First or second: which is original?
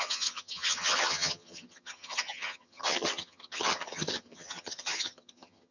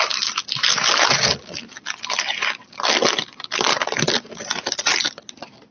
second